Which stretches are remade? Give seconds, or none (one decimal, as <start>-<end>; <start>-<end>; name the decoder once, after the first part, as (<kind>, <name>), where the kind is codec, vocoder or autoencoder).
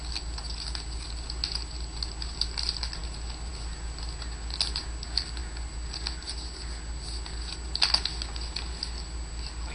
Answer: none